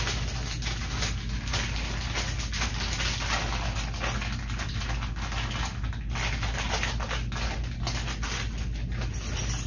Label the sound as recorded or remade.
recorded